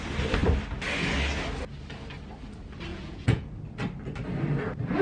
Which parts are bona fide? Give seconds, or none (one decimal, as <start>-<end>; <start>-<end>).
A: 0.0-2.9; 3.5-5.0